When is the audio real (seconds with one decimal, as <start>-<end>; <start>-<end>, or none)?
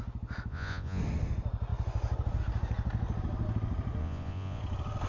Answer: 0.0-0.5; 1.0-4.0; 4.6-5.1